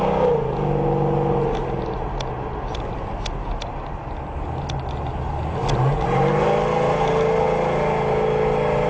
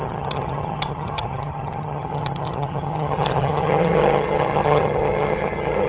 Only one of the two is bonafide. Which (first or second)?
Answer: first